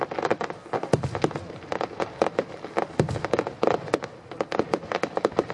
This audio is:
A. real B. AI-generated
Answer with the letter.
A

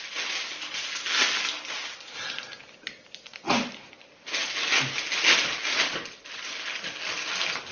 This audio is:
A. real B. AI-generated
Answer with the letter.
A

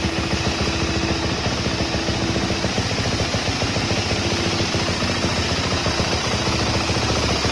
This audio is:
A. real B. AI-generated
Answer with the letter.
A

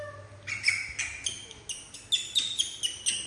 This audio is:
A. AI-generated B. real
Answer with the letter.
B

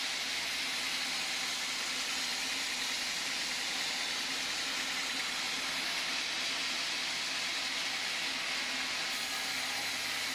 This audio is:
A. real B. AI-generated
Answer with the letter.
A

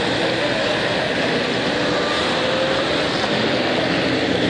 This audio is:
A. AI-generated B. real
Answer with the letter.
B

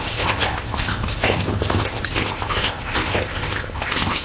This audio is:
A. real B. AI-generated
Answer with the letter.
B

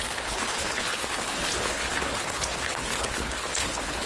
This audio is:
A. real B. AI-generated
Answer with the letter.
B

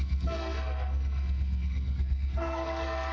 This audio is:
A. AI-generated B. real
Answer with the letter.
A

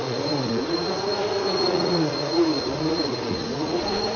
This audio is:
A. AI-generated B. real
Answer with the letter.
A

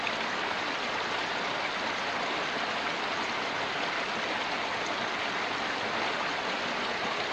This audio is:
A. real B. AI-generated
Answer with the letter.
A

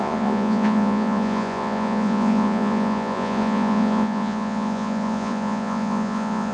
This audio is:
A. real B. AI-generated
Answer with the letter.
B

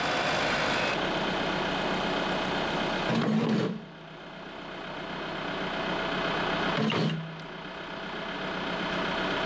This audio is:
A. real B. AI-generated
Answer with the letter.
A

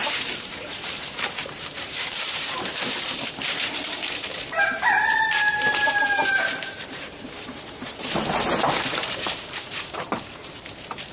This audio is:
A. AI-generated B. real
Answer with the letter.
A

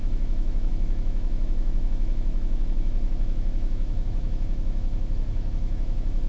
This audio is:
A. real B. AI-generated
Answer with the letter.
B